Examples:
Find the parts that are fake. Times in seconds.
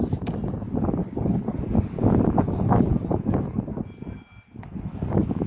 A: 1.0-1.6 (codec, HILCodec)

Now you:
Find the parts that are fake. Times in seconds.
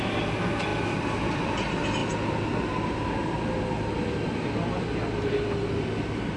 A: 0.7-1.5 (vocoder, BigVGAN v2); 2.0-5.8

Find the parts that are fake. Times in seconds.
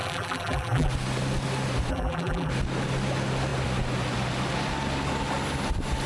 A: 0.0-0.9 (vocoder, BigVGAN v2); 1.9-2.5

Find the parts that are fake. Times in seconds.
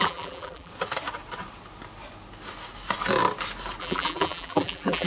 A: 0.0-0.7 (vocoder, BigVGAN v2); 3.8-5.1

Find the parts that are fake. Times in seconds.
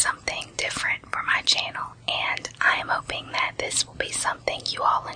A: none